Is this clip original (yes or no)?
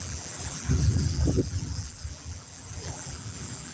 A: no